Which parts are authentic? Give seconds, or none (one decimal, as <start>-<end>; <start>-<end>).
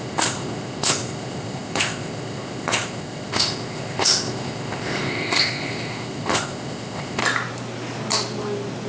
7.2-8.9